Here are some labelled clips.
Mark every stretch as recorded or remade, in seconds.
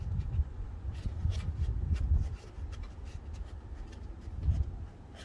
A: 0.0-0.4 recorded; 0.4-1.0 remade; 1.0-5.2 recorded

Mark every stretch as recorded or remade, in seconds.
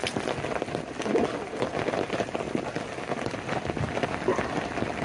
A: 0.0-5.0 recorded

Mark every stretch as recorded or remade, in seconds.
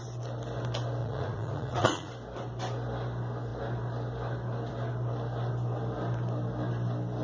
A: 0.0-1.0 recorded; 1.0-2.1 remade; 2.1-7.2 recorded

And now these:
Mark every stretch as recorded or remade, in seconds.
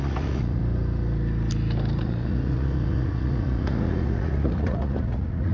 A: 0.0-0.6 remade; 0.6-2.0 recorded; 2.0-5.5 remade